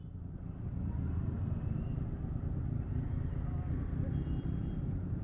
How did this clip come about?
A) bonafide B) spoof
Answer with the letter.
A